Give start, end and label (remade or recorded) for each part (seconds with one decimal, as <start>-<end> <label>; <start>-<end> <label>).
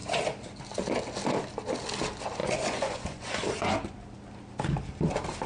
0.0-2.4 recorded; 2.4-3.7 remade; 3.7-5.5 recorded